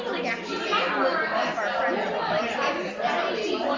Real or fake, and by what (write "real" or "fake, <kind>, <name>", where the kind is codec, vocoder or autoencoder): real